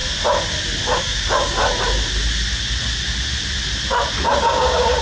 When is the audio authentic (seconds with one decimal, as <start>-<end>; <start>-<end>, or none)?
0.0-1.0; 1.6-4.4